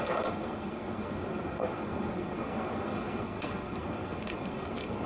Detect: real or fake fake